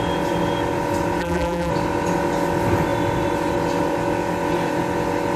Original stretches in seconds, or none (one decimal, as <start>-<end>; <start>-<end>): 0.0-1.2; 1.7-5.4